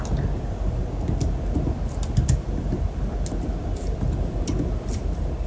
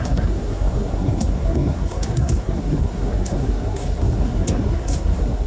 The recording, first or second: first